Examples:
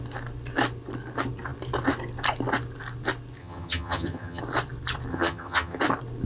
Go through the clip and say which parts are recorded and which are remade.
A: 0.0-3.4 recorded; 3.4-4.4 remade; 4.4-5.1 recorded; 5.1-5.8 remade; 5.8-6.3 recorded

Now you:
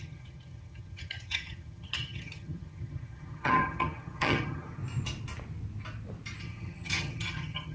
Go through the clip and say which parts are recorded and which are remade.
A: 0.0-4.8 remade; 4.8-6.4 recorded; 6.4-7.7 remade